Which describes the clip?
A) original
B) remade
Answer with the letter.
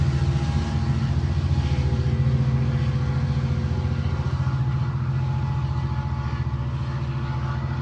A